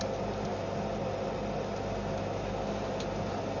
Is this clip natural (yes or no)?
yes